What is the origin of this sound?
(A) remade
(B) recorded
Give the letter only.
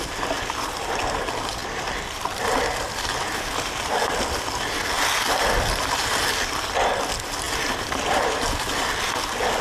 B